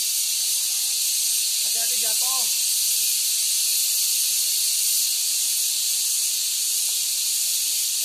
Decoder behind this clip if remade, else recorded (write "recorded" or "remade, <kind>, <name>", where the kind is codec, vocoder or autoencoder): recorded